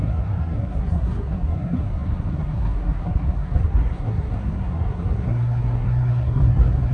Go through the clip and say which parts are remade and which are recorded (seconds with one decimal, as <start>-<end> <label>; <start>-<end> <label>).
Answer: 0.0-6.9 remade